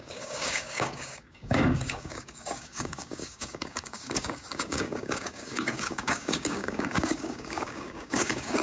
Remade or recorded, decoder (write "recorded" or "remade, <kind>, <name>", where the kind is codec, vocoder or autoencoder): remade, codec, DAC